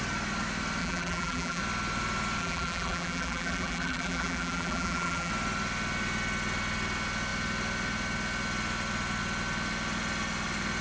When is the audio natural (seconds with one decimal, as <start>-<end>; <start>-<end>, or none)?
0.0-0.8; 1.6-2.4; 5.3-10.8